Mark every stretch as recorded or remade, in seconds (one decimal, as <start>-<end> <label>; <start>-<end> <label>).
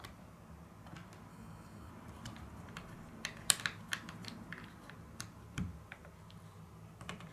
0.0-1.3 recorded; 1.3-1.9 remade; 1.9-7.3 recorded